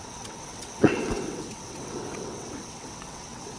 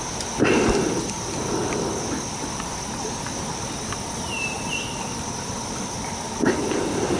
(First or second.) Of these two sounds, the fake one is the first